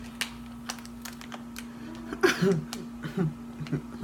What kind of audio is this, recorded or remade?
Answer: recorded